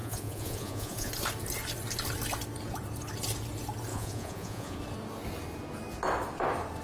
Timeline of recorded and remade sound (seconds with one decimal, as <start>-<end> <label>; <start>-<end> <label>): 0.0-1.1 remade; 1.1-3.9 recorded; 3.9-4.8 remade; 4.8-6.8 recorded